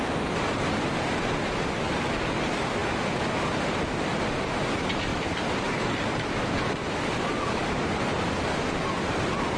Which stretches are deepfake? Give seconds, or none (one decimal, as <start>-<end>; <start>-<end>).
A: 5.1-9.2